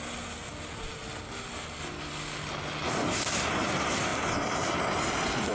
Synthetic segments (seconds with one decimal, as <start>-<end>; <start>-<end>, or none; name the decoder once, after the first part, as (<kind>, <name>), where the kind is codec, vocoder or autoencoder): none